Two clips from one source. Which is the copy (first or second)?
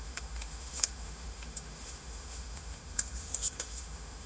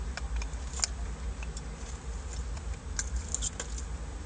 first